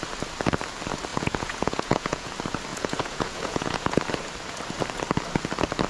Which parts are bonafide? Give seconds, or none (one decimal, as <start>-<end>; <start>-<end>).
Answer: 0.0-1.1; 2.3-2.7; 4.0-5.9